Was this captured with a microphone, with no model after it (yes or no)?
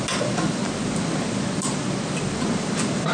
yes